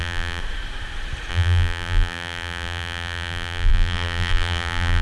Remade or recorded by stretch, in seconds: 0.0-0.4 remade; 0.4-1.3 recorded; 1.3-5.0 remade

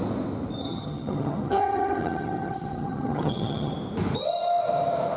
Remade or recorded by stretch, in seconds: 0.0-0.6 recorded; 0.6-3.7 remade; 3.7-5.2 recorded

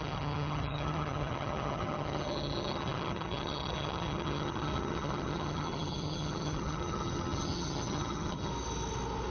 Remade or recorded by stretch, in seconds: 0.0-8.5 remade; 8.5-9.3 recorded

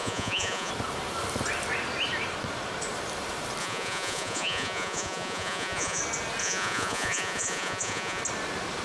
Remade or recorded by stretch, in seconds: 0.0-0.7 remade; 0.7-3.6 recorded; 3.6-6.0 remade; 6.0-6.4 recorded; 6.4-8.2 remade; 8.2-8.8 recorded

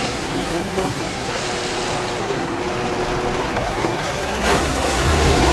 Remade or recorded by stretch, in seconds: 0.0-1.4 remade; 1.4-2.2 recorded; 2.2-2.6 remade; 2.6-3.4 recorded; 3.4-5.5 remade

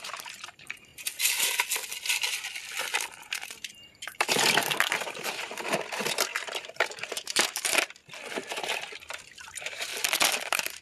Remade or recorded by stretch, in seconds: 0.0-0.9 remade; 0.9-3.2 recorded; 3.2-8.0 remade; 8.0-8.5 recorded; 8.5-9.9 remade; 9.9-10.4 recorded; 10.4-10.8 remade